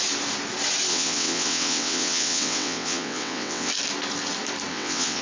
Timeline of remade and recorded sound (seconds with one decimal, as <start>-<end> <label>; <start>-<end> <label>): 0.0-0.9 recorded; 0.9-3.7 remade; 3.7-4.7 recorded; 4.7-5.2 remade

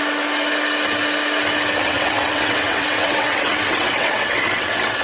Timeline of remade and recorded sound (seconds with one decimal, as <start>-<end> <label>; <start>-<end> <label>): 0.0-1.8 recorded; 1.8-5.0 remade